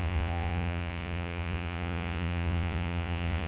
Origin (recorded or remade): remade